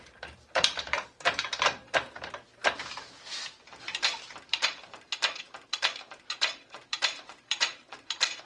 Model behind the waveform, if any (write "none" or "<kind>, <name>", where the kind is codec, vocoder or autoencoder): vocoder, BigVGAN v2